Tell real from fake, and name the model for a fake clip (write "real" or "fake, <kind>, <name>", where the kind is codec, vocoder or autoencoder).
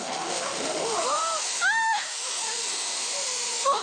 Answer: fake, autoencoder, DAC-VAE